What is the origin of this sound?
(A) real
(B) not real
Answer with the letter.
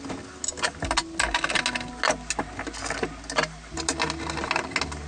A